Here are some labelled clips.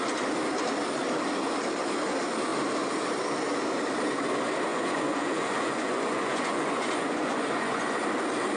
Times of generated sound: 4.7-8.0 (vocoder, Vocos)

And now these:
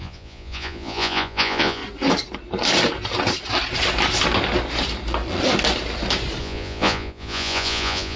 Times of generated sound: 0.0-1.8 (vocoder, Vocos); 6.4-8.2

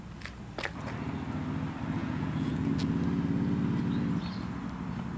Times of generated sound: 2.0-2.7 (vocoder, Vocos)

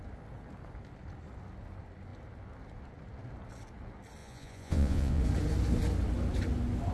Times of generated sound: 4.2-5.2 (vocoder, Vocos)

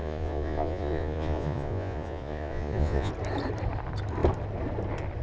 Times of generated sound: 0.0-3.1 (vocoder, Vocos)

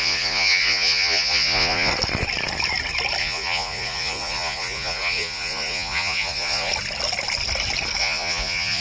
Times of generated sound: 0.0-1.9 (vocoder, Vocos); 3.2-6.7; 8.0-8.8

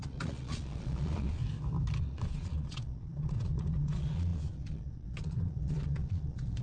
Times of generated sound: 0.0-1.4 (vocoder, Vocos); 2.0-6.6

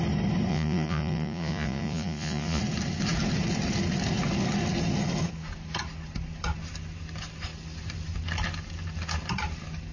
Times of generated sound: 0.5-2.6 (vocoder, Vocos)